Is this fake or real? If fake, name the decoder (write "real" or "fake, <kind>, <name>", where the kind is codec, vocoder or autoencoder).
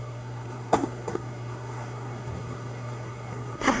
fake, codec, SNAC